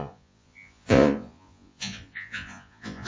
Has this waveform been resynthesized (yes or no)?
yes